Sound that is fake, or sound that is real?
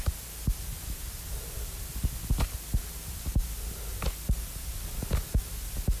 real